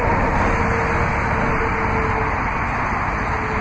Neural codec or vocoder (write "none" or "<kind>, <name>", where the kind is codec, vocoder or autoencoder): none